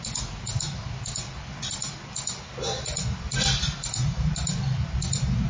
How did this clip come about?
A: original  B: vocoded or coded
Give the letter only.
A